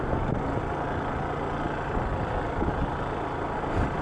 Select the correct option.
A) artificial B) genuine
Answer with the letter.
B